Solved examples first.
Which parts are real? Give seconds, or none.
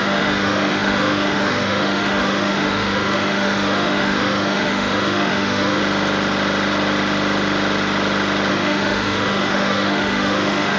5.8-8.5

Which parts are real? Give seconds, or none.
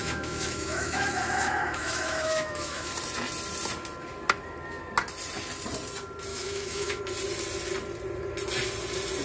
2.9-6.3; 7.0-9.2